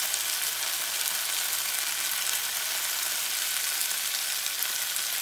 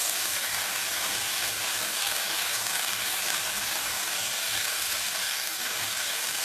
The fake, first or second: second